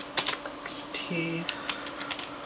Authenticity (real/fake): real